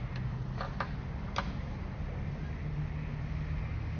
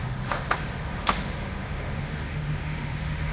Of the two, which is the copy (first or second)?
second